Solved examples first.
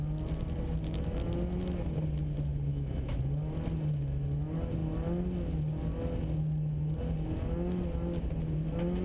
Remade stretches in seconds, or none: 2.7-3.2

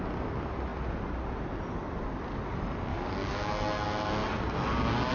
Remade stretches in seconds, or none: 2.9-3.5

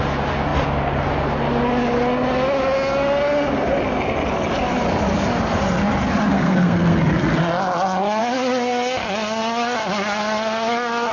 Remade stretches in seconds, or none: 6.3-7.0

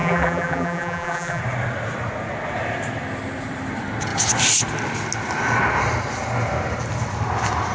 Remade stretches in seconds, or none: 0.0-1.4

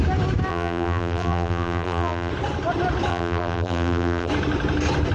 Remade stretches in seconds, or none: 0.5-2.3; 3.1-4.3

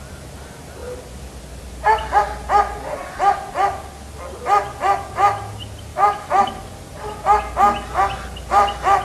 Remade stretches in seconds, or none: 5.9-6.5